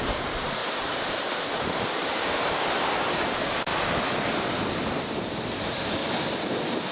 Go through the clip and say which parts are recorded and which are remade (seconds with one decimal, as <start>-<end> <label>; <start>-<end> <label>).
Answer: 0.0-3.7 remade; 3.7-4.9 recorded; 4.9-6.0 remade; 6.0-6.9 recorded